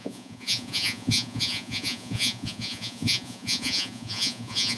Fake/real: fake